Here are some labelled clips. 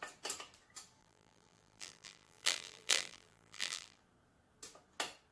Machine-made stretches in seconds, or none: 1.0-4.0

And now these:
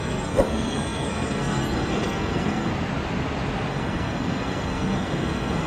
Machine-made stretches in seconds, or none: 0.0-2.7; 3.7-5.7

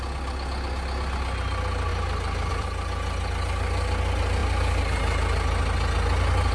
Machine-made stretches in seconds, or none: none

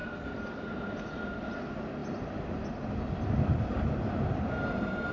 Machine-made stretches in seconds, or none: none

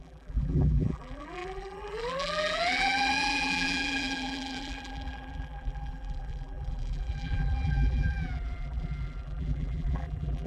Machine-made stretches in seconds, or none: 0.0-10.5

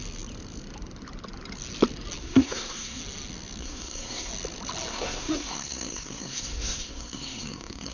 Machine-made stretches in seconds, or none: 2.2-3.0; 3.6-4.3; 4.9-7.9

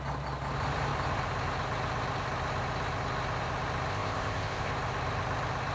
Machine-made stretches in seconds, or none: 3.9-4.7